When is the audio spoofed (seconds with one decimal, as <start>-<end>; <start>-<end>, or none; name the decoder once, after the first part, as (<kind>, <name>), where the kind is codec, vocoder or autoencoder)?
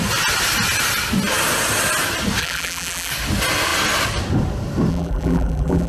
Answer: 2.4-3.1 (vocoder, BigVGAN v2); 4.9-5.9